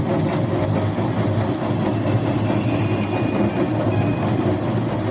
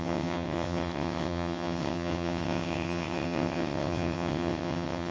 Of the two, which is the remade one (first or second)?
second